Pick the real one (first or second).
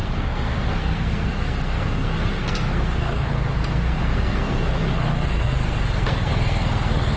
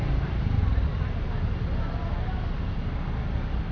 second